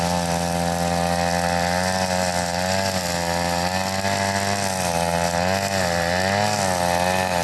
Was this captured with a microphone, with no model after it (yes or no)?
yes